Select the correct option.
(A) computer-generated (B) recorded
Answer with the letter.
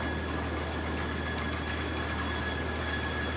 B